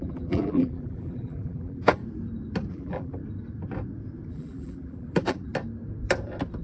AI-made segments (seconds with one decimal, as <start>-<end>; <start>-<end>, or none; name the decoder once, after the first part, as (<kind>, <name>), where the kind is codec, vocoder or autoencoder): 0.0-2.0 (vocoder, BigVGAN v2); 2.7-3.2; 4.3-5.5